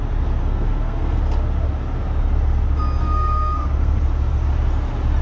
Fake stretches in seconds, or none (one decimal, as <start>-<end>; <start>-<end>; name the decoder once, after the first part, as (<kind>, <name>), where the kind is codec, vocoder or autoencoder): 0.4-1.2 (codec, SNAC); 3.0-4.0